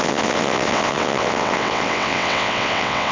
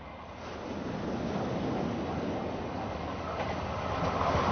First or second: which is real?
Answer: second